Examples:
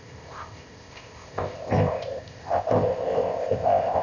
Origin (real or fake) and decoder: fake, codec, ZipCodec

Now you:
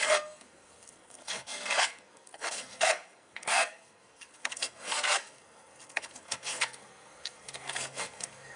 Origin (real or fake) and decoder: fake, codec, SNAC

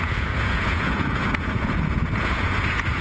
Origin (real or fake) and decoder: fake, vocoder, Vocos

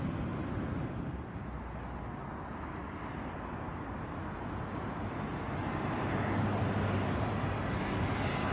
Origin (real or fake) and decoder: real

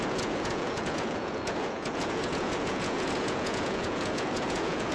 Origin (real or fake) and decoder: fake, vocoder, Vocos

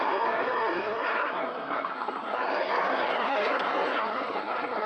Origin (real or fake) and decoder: fake, codec, SNAC